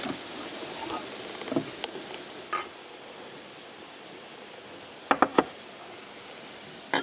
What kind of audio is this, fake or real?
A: real